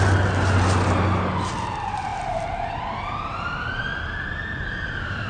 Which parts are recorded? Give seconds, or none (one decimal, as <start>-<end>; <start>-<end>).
0.0-5.3